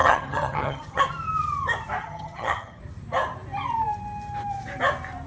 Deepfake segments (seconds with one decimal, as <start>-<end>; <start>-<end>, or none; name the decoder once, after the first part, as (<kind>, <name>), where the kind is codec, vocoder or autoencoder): 0.0-1.0 (vocoder, HiFi-GAN); 2.0-2.8